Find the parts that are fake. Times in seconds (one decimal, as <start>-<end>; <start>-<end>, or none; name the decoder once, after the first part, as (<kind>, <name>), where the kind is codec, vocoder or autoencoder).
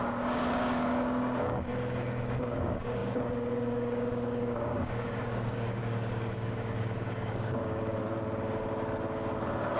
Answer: 0.0-1.7 (codec, DAC); 2.4-8.0